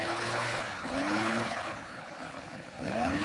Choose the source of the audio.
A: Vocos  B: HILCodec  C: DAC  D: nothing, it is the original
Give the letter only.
B